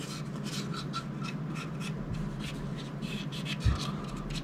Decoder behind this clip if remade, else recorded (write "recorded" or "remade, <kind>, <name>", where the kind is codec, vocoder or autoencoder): recorded